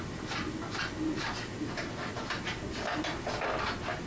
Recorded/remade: recorded